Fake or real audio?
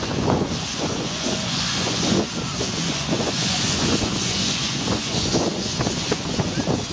fake